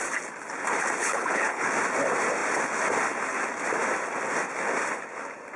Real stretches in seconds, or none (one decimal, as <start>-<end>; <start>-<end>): 0.0-1.0; 1.7-5.6